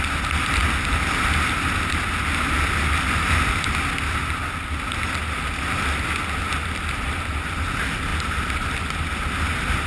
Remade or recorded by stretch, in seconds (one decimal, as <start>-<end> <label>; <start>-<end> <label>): 0.0-9.9 recorded